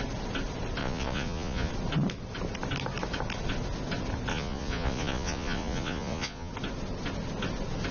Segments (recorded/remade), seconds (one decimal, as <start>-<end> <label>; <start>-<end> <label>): 0.0-0.8 recorded; 0.8-1.7 remade; 1.7-4.3 recorded; 4.3-6.5 remade; 6.5-7.9 recorded